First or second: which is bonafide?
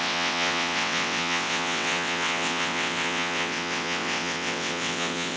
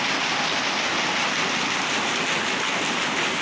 second